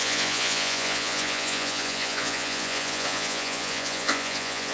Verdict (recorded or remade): remade